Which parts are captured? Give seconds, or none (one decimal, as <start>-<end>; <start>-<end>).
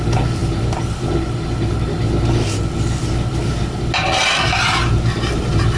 0.0-5.8